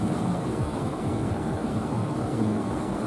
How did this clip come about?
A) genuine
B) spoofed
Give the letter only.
B